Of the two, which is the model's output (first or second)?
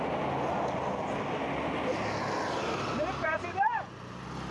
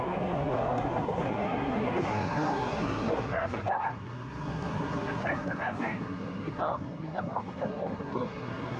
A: second